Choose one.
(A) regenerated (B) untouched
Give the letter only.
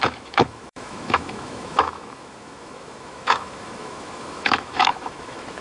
A